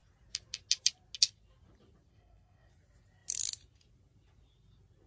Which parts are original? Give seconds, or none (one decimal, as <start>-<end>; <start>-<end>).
0.0-2.1; 2.7-5.1